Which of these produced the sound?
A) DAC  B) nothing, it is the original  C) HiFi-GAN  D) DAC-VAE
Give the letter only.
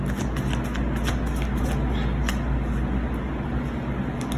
B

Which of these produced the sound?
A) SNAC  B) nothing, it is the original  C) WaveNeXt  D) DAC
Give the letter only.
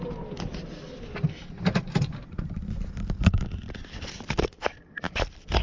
B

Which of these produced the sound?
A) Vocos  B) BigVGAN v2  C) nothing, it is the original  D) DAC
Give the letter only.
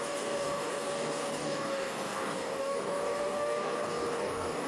D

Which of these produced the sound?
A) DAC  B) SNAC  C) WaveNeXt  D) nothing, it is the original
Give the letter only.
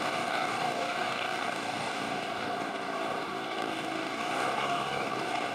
A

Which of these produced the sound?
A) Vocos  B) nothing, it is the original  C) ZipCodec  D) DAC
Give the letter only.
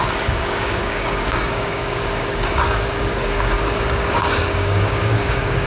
D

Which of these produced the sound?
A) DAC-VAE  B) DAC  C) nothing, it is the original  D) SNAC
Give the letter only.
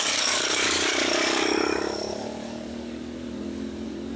B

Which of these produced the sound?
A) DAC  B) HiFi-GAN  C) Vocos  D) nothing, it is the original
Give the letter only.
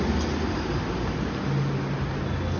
D